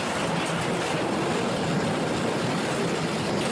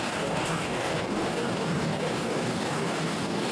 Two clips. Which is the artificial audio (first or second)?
second